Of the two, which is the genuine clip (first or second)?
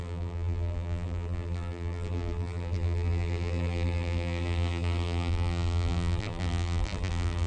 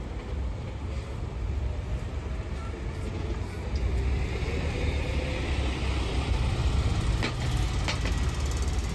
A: second